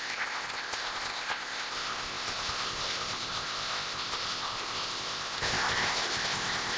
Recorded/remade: remade